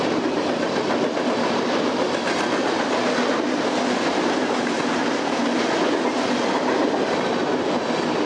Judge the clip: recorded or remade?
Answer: recorded